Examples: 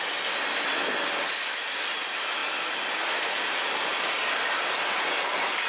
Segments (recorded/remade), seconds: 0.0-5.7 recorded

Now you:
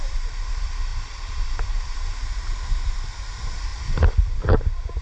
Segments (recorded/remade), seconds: 0.0-3.7 recorded; 3.7-4.3 remade; 4.3-5.0 recorded

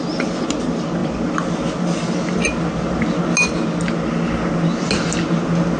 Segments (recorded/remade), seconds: 0.0-5.8 recorded